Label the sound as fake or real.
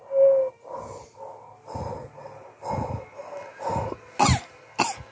real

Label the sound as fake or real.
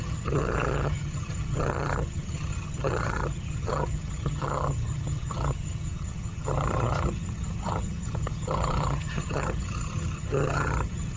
fake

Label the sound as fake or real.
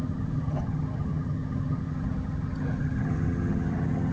fake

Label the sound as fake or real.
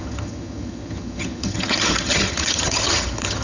fake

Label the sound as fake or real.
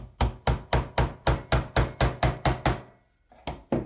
real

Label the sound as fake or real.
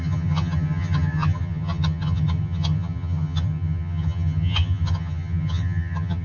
fake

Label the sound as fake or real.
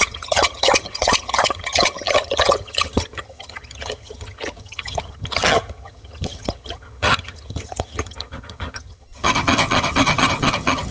fake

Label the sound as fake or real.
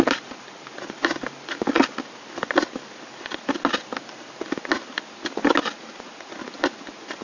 real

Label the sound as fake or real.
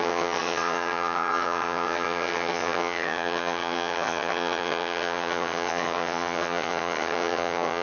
fake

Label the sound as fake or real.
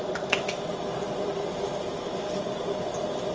real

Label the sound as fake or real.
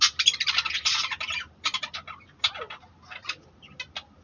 real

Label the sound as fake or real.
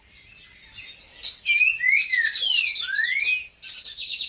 real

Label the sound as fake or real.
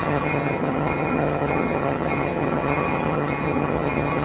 fake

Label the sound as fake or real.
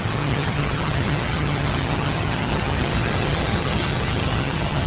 fake